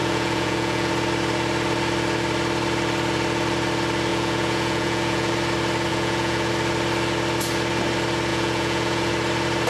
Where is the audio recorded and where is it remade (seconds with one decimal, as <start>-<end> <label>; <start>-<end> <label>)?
0.0-0.9 remade; 0.9-4.1 recorded; 4.1-5.3 remade; 5.3-5.9 recorded; 5.9-6.5 remade; 6.5-8.3 recorded; 8.3-9.1 remade; 9.1-9.7 recorded